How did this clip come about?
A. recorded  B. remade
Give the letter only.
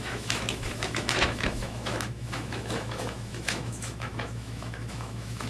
B